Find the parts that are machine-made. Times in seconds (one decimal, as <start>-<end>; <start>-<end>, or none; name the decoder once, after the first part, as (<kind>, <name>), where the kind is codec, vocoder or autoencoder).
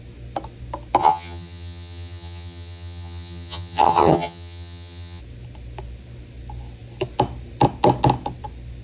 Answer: 1.0-5.2 (vocoder, HiFi-GAN)